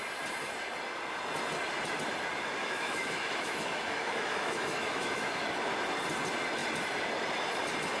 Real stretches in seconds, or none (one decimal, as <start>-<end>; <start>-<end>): 0.0-2.6; 5.7-8.0